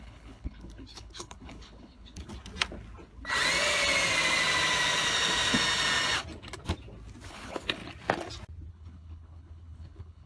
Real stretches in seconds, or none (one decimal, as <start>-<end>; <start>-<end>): 2.3-7.3; 7.8-8.7